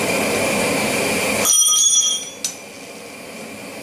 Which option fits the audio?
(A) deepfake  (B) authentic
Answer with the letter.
B